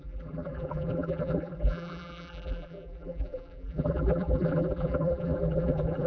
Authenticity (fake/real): fake